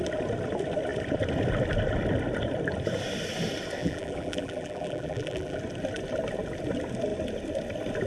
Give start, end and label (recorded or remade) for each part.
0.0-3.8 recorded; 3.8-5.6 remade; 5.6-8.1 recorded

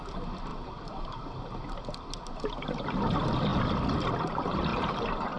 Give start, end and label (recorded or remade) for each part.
0.0-0.5 recorded; 0.5-1.4 remade; 1.4-4.7 recorded; 4.7-5.4 remade

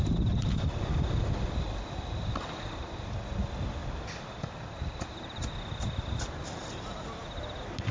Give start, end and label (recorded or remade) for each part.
0.0-3.8 recorded; 3.8-5.5 remade; 5.5-7.9 recorded